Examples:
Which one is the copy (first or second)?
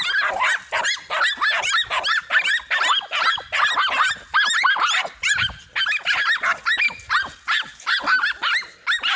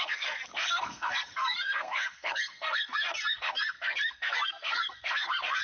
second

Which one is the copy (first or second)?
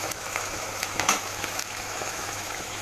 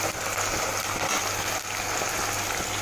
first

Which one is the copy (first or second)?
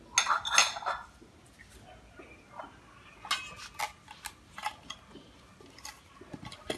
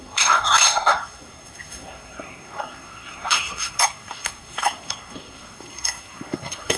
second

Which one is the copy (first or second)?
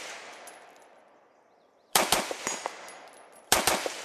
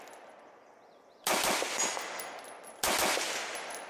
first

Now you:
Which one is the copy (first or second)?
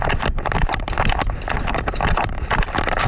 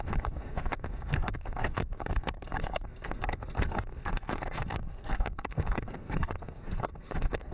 second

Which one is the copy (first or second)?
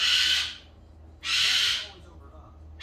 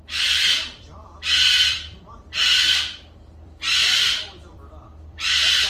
second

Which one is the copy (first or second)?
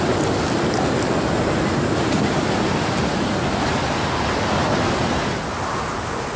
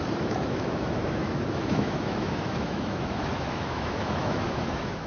second